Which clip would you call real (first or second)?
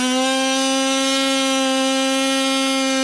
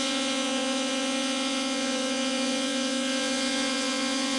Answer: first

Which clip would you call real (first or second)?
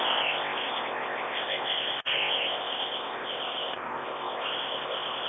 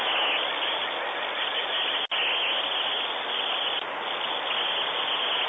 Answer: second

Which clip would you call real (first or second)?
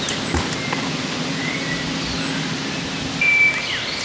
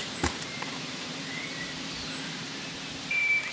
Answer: first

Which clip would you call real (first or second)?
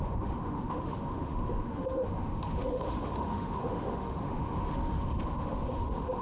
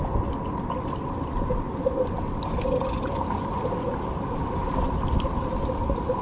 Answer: second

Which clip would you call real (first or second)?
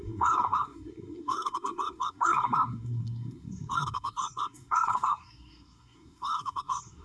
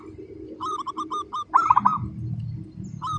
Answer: second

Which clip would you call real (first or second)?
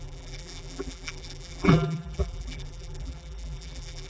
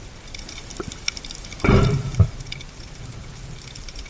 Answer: second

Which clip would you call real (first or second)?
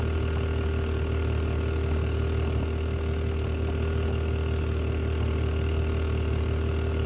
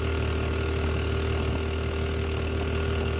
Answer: second